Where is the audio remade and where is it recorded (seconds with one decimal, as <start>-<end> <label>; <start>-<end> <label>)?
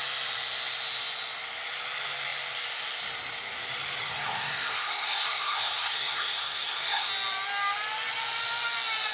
0.0-4.0 recorded; 4.0-7.1 remade; 7.1-9.1 recorded